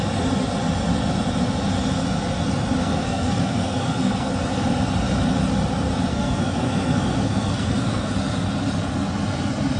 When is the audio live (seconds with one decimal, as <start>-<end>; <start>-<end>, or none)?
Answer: 0.0-2.8; 4.3-6.1; 8.1-9.8